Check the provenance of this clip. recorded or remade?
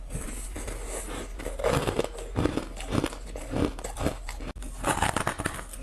recorded